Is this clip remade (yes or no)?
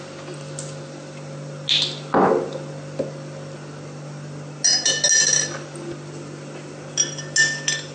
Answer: no